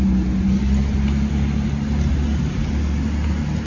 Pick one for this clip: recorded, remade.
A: recorded